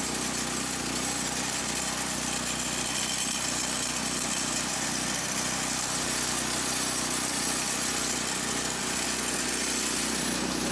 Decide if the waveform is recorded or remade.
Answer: recorded